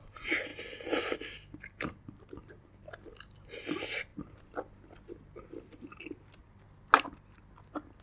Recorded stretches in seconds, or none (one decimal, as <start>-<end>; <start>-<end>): 0.0-8.0